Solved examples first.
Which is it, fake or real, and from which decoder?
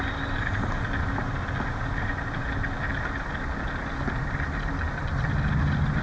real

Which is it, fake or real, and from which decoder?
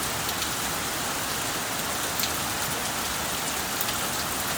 real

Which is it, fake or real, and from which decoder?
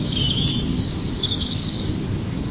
fake, codec, DAC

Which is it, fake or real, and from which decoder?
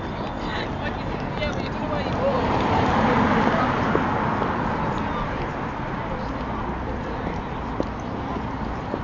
real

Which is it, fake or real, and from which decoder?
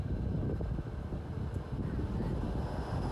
real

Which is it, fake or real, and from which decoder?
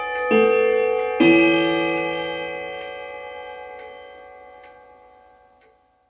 real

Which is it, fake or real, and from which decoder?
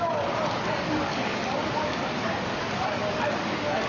fake, codec, DAC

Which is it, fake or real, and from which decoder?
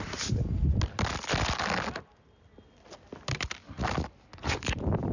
real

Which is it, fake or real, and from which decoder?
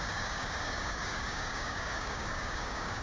fake, codec, DAC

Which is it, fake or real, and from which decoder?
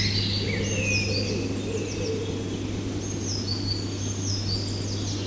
real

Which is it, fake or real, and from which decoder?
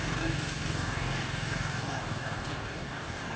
fake, codec, DAC